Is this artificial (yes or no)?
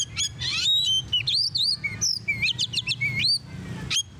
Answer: no